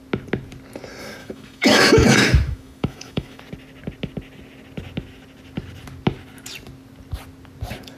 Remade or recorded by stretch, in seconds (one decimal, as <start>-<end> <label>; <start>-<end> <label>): 0.0-1.2 recorded; 1.2-3.4 remade; 3.4-8.0 recorded